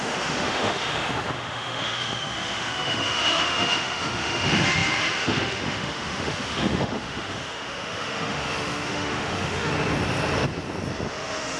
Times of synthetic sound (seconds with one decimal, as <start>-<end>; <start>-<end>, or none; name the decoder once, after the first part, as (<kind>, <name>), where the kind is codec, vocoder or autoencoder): 0.0-9.7 (autoencoder, DAC-VAE); 11.1-11.6